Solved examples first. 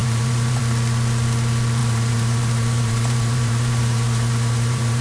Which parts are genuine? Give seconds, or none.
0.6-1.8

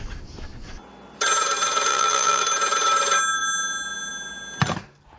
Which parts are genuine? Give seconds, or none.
0.0-1.9; 2.4-5.2

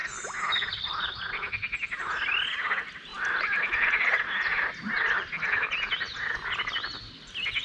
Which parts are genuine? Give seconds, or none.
0.0-3.1; 4.9-7.6